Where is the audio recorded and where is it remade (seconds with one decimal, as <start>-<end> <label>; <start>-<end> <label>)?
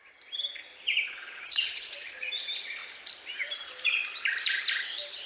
0.0-0.7 recorded; 0.7-2.1 remade; 2.1-2.8 recorded; 2.8-5.3 remade